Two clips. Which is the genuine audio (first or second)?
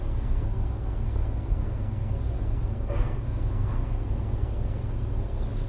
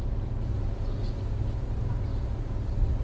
second